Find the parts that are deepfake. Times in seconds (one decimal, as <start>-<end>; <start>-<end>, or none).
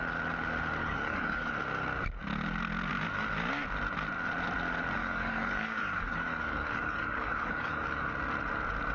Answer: 0.8-1.5; 5.0-8.1